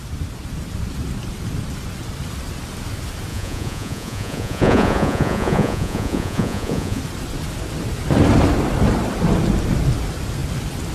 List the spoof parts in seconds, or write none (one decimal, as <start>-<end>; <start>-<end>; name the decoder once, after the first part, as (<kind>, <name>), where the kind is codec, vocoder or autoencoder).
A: 3.3-7.0 (vocoder, Vocos)

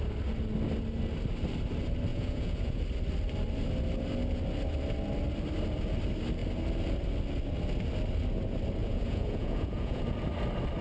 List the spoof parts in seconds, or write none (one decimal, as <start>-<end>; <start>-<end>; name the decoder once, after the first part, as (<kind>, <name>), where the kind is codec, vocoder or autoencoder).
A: 2.1-2.8 (vocoder, Vocos); 8.8-10.0

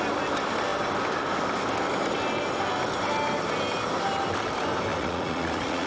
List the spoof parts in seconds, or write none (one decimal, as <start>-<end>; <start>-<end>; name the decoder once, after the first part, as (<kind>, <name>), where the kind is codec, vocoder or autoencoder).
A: 4.9-5.9 (vocoder, Vocos)

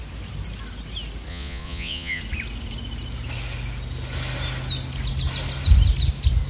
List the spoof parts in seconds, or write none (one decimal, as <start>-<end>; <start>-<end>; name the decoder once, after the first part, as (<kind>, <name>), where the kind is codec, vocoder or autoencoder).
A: 1.3-2.2 (vocoder, Vocos)

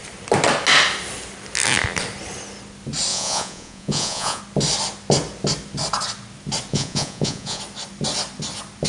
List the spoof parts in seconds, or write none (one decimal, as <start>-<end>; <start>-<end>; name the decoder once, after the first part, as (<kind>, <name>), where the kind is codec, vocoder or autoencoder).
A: 3.1-4.4 (vocoder, Vocos); 6.7-7.6